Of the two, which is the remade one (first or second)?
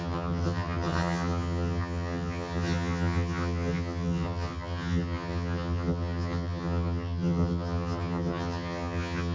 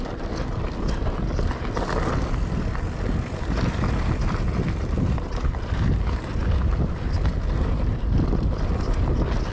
first